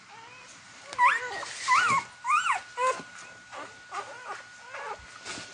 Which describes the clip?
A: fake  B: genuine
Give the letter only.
B